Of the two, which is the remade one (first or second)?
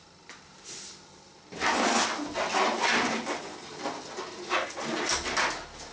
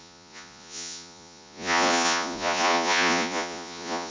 second